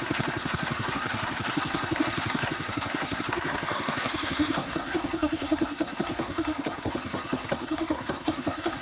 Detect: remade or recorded remade